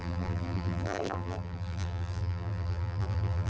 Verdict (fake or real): fake